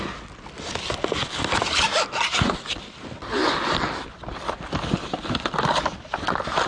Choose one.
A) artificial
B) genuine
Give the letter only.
B